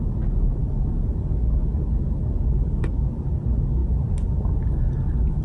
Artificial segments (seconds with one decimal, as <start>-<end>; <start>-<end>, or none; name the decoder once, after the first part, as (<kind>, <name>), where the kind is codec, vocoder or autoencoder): none